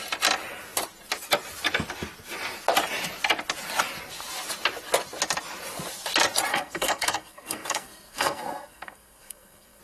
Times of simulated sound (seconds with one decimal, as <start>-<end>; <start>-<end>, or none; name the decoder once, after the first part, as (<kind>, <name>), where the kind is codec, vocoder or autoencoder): 6.5-9.8 (codec, SNAC)